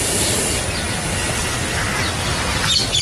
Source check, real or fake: real